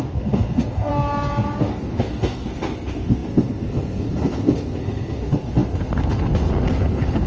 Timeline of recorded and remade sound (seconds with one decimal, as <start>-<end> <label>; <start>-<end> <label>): 0.0-0.9 remade; 0.9-1.6 recorded; 1.6-7.3 remade